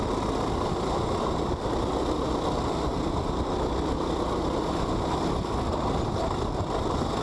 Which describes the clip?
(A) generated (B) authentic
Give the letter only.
B